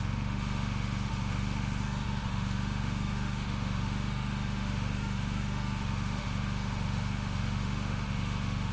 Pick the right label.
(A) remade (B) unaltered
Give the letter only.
A